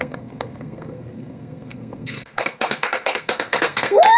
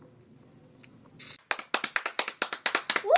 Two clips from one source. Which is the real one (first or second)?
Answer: second